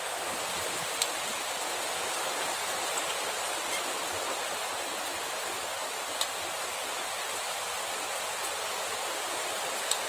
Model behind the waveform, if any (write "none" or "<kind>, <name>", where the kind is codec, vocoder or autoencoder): none